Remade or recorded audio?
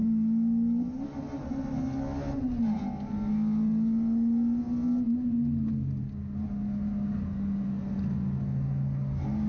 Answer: recorded